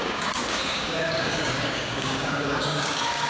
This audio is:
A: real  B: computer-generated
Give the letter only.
B